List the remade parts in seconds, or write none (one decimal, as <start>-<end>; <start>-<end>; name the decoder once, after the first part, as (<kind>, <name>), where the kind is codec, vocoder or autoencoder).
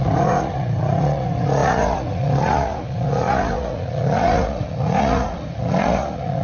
0.0-6.4 (vocoder, Vocos)